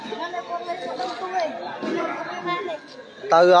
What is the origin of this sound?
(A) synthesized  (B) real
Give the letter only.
B